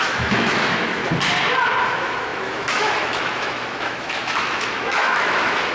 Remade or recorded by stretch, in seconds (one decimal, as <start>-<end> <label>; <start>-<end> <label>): 0.0-1.0 remade; 1.0-1.9 recorded; 1.9-5.7 remade